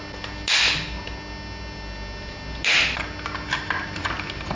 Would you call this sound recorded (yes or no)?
yes